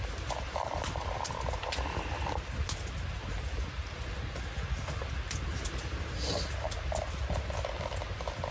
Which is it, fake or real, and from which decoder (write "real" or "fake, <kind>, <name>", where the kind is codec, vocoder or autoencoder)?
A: real